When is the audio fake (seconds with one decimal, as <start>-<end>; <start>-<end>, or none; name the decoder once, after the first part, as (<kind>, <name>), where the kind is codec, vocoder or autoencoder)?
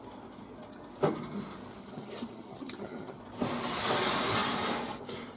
1.8-3.2 (vocoder, HiFi-GAN)